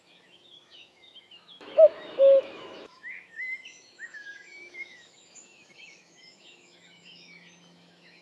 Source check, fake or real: fake